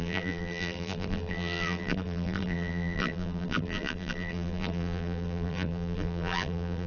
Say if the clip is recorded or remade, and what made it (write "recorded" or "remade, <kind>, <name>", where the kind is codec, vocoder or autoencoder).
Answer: remade, vocoder, BigVGAN v2